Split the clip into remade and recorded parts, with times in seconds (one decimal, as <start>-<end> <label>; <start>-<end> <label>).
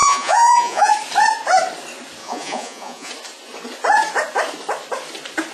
0.0-0.9 remade; 0.9-2.2 recorded; 2.2-3.1 remade; 3.1-5.5 recorded